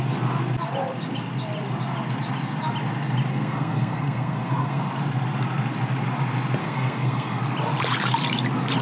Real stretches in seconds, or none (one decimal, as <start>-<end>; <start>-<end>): 0.0-3.3; 4.9-6.6; 7.4-8.8